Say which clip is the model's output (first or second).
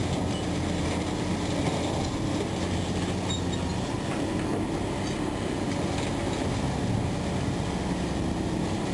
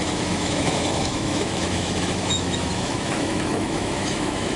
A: second